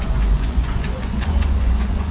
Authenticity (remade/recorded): remade